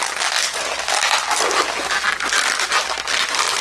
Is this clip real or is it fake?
real